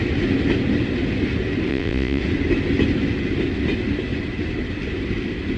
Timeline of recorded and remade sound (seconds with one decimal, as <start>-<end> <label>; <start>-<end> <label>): 0.0-1.7 recorded; 1.7-2.2 remade; 2.2-5.6 recorded